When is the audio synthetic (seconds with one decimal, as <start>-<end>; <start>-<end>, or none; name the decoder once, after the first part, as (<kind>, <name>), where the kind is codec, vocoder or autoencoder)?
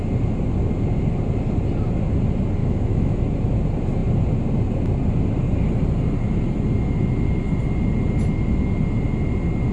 2.6-3.2 (autoencoder, DAC-VAE)